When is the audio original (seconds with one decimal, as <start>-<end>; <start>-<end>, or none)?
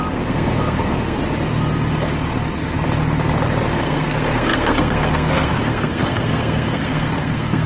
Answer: 1.2-3.8